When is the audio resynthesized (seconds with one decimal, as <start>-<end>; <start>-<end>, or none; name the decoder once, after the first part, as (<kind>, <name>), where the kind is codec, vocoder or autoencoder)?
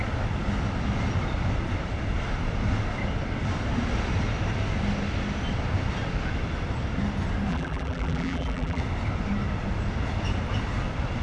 7.5-8.8 (vocoder, BigVGAN v2)